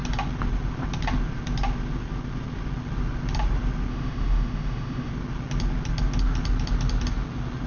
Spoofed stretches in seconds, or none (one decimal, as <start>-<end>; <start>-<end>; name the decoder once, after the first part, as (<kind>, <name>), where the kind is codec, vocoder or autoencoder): 3.9-5.1 (autoencoder, DAC-VAE)